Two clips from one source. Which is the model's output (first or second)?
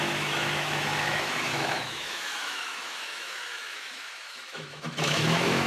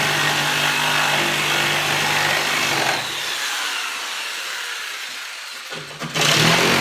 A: first